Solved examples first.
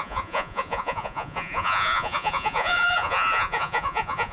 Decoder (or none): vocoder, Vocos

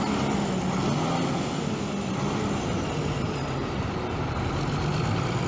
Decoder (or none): none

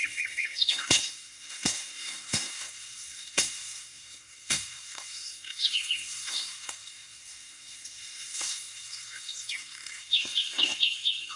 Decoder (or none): codec, SNAC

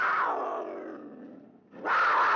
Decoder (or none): none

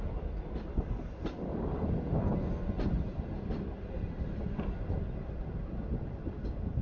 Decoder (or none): none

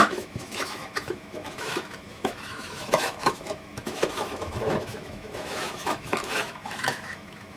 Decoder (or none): autoencoder, DAC-VAE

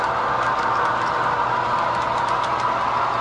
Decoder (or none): none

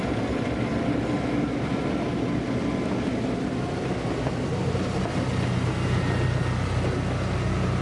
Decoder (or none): none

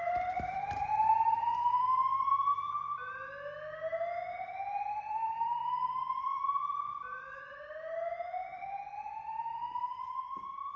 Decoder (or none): none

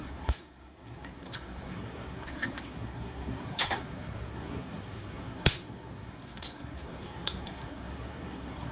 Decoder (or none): codec, SNAC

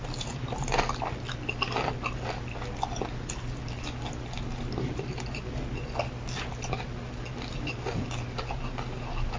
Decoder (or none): none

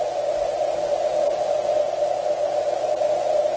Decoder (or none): none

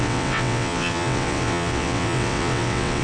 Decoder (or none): vocoder, WaveNeXt